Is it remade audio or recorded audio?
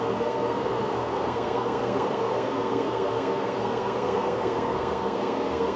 remade